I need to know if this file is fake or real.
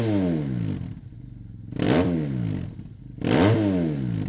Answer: real